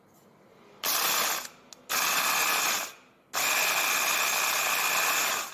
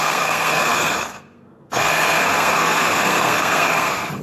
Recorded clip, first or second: first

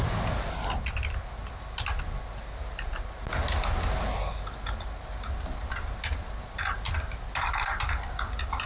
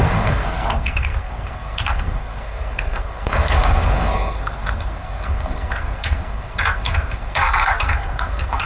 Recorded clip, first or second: first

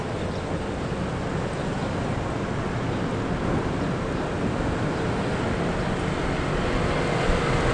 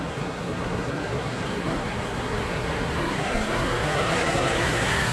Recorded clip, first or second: first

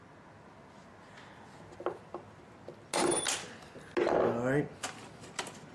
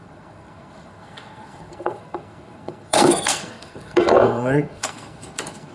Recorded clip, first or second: first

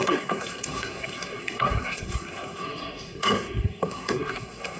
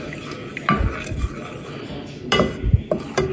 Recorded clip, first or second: second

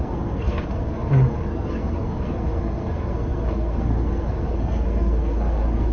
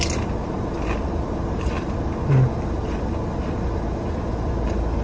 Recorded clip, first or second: second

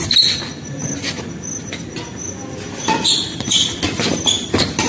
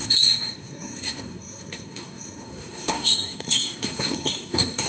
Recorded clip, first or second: first